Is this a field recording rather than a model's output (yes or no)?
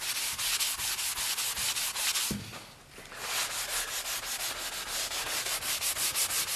yes